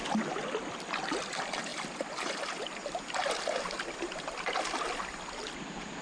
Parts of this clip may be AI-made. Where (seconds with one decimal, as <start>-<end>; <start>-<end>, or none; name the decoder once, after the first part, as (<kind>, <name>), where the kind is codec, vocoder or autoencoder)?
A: none